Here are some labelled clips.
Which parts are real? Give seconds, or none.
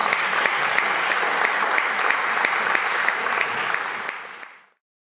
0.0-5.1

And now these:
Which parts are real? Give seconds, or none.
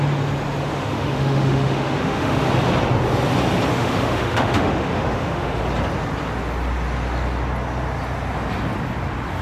0.0-0.6; 2.5-3.7; 5.6-9.4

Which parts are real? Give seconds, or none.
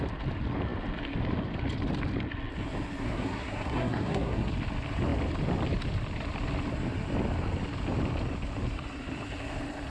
0.0-3.0; 4.5-9.9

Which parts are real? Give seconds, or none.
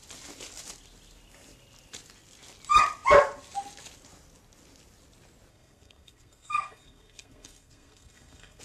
0.0-5.5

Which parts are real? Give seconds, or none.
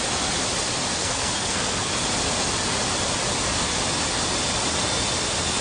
0.0-1.0; 1.9-5.6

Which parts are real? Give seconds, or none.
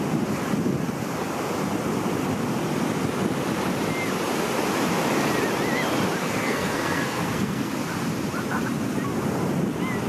0.0-6.2; 7.7-10.1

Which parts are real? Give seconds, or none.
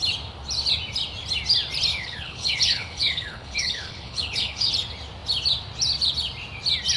0.0-1.9; 4.7-7.0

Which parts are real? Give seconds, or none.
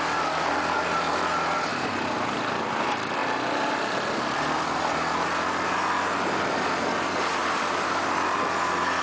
0.0-1.7; 2.7-7.4; 8.1-9.0